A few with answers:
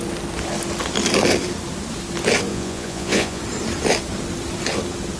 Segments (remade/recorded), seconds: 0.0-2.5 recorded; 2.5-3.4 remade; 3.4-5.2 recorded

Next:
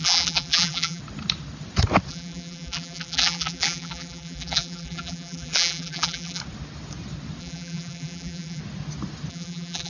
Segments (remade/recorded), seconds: 0.0-1.0 remade; 1.0-2.1 recorded; 2.1-6.4 remade; 6.4-7.4 recorded; 7.4-8.6 remade; 8.6-9.3 recorded; 9.3-9.9 remade

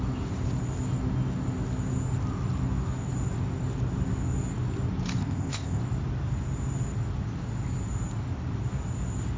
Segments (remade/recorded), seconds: 0.0-5.2 recorded; 5.2-5.8 remade; 5.8-9.4 recorded

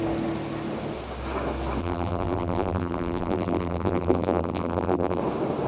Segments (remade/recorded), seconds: 0.0-1.8 recorded; 1.8-5.2 remade; 5.2-5.7 recorded

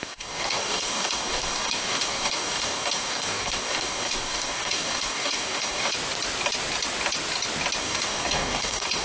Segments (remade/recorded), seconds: 0.0-5.9 remade; 5.9-7.8 recorded; 7.8-9.0 remade

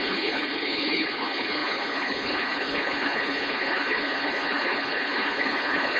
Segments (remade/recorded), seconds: 0.0-6.0 remade

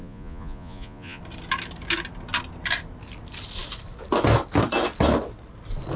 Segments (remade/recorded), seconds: 0.0-1.2 remade; 1.2-6.0 recorded

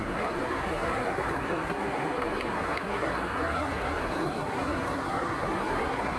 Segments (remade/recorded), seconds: 0.0-6.2 remade